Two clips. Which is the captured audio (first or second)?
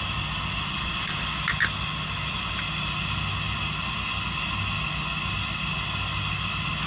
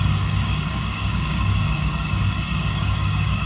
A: first